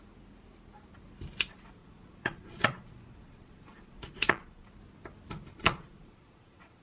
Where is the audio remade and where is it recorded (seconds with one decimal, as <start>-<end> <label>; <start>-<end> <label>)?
0.0-1.8 recorded; 1.8-4.7 remade; 4.7-5.5 recorded; 5.5-6.8 remade